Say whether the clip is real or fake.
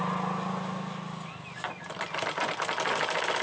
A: real